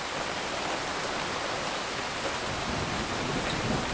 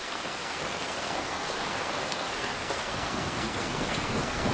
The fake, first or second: second